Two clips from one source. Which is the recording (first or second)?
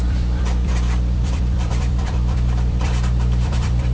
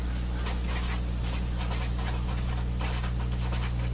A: second